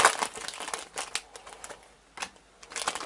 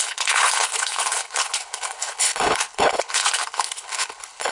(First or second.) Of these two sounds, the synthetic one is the second